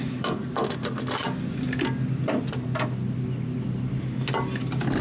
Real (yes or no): yes